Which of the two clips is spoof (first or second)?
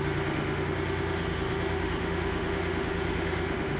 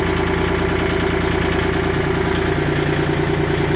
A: first